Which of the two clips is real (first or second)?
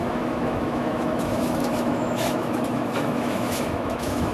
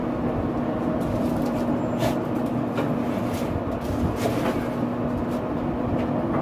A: second